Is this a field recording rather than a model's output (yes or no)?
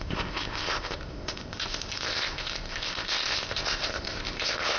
no